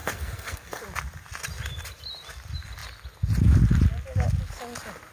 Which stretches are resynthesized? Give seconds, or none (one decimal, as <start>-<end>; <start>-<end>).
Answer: 0.0-0.8